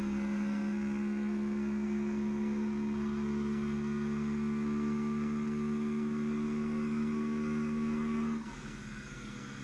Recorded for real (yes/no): no